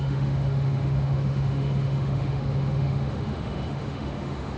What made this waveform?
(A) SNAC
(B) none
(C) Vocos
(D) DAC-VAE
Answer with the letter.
D